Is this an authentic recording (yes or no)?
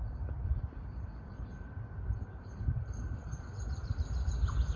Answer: yes